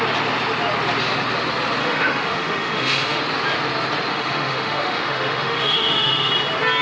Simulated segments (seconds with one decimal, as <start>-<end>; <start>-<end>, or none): 1.8-3.2; 4.1-6.3